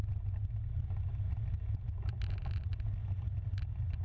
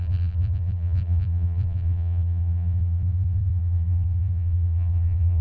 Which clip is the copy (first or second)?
second